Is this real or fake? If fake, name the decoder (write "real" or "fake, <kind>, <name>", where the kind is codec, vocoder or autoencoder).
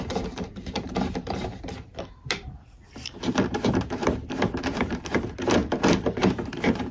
fake, vocoder, BigVGAN v2